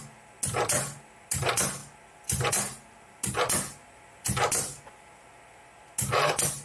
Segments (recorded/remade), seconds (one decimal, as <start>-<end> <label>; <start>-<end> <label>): 0.0-6.6 recorded

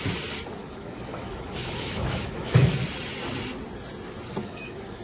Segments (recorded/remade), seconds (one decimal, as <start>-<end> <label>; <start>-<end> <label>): 0.0-0.6 recorded; 0.6-2.7 remade; 2.7-4.4 recorded; 4.4-5.0 remade